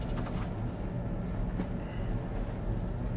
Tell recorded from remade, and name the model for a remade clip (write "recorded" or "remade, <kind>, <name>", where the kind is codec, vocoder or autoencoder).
recorded